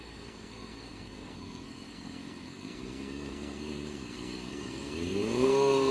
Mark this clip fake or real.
fake